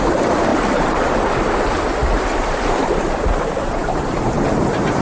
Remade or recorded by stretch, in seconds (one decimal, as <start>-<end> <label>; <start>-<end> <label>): 0.0-0.5 recorded; 0.5-1.0 remade; 1.0-2.0 recorded; 2.0-3.0 remade; 3.0-5.0 recorded